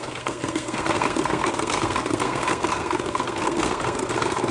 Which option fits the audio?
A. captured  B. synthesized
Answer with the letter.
B